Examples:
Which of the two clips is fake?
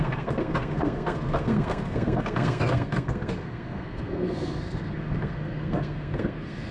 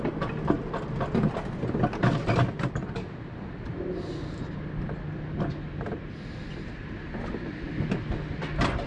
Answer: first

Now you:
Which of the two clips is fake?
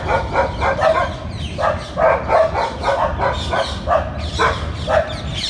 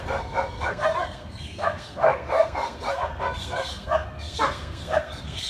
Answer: second